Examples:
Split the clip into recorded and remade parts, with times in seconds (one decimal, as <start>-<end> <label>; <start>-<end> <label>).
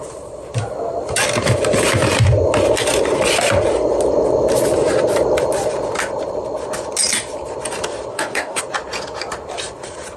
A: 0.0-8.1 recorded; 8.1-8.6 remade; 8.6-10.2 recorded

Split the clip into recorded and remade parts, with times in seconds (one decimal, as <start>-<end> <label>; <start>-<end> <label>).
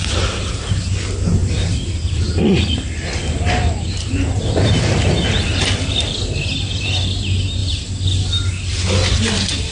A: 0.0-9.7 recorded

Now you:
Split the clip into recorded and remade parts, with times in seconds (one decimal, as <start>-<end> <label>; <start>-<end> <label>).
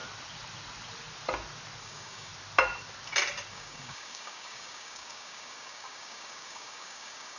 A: 0.0-1.8 recorded; 1.8-2.3 remade; 2.3-3.5 recorded; 3.5-7.4 remade